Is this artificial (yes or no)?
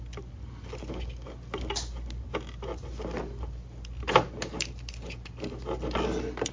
no